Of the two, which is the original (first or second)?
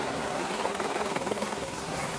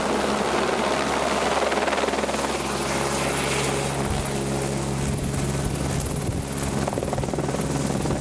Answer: second